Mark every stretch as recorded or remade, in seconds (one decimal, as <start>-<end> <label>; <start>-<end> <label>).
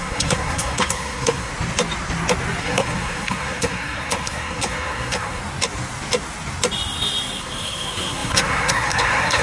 0.0-1.5 remade; 1.5-2.6 recorded; 2.6-5.4 remade; 5.4-7.4 recorded; 7.4-9.4 remade